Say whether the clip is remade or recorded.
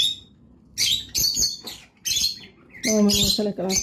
recorded